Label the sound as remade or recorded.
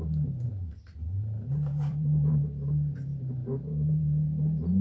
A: remade